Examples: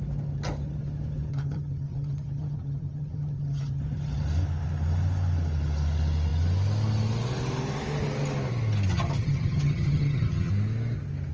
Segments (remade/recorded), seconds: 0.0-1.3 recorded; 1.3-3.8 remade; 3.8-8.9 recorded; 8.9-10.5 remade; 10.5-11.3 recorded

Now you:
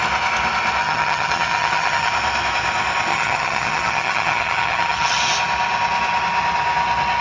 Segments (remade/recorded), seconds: 0.0-0.8 recorded; 0.8-2.1 remade; 2.1-3.1 recorded; 3.1-5.2 remade; 5.2-7.2 recorded

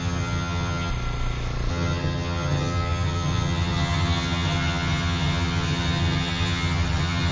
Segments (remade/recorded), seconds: 0.0-0.9 remade; 0.9-1.7 recorded; 1.7-7.3 remade

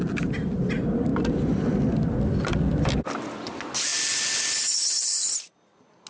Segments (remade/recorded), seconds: 0.0-6.1 recorded

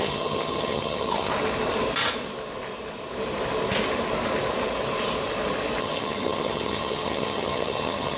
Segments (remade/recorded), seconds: 0.0-1.3 remade; 1.3-5.8 recorded; 5.8-8.2 remade

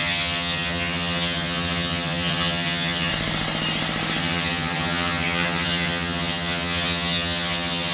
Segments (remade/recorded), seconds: 0.0-3.1 remade; 3.1-4.2 recorded; 4.2-7.9 remade

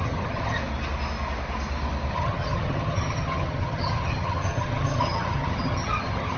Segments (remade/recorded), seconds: 0.0-0.6 remade; 0.6-2.1 recorded; 2.1-6.4 remade